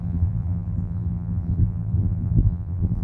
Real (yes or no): no